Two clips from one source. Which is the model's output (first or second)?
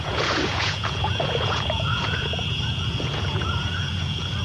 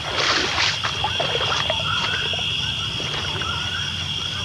first